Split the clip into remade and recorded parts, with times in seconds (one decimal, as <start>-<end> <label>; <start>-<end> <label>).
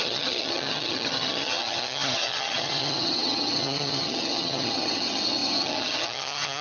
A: 0.0-6.6 remade